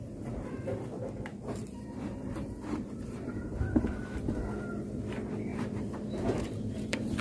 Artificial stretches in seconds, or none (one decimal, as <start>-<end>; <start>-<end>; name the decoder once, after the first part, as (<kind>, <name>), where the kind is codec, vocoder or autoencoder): 1.3-4.4 (vocoder, BigVGAN v2); 5.5-7.2